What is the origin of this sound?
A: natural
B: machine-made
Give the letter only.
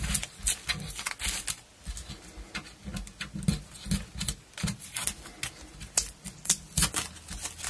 A